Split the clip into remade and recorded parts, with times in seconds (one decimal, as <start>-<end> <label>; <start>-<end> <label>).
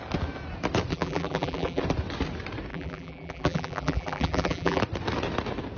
0.0-0.9 recorded; 0.9-1.8 remade; 1.8-2.7 recorded; 2.7-4.8 remade; 4.8-5.8 recorded